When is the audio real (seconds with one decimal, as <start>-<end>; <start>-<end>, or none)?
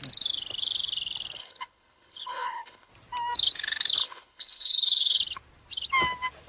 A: 0.0-1.4; 2.9-4.0; 5.2-6.5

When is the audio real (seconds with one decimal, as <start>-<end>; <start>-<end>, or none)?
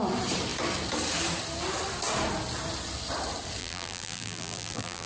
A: 0.0-3.6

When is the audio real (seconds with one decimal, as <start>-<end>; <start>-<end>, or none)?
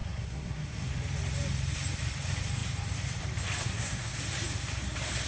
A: 0.9-3.6; 4.2-5.3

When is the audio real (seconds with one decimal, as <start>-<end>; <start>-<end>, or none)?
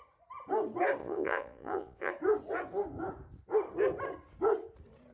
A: 0.0-1.0; 2.1-5.1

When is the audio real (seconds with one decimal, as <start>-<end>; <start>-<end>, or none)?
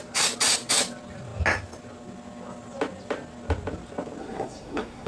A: 0.0-4.2